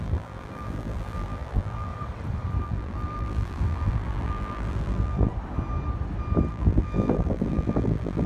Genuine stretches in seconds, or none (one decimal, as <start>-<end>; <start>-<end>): 1.9-2.6; 5.3-6.5